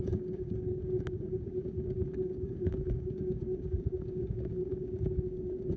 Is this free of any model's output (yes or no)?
no